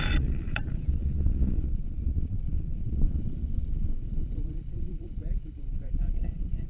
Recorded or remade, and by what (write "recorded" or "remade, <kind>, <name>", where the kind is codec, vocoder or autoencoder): remade, vocoder, Vocos